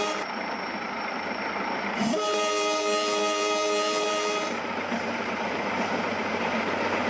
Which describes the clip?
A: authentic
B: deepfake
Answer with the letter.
B